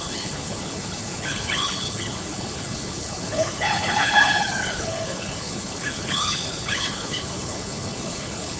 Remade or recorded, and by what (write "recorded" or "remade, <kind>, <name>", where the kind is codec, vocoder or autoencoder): remade, codec, HILCodec